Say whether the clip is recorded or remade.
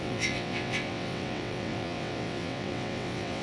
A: remade